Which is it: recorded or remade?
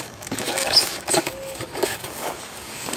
remade